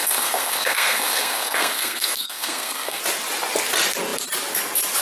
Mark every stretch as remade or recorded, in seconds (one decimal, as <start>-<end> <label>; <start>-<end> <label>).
0.0-3.0 remade; 3.0-5.0 recorded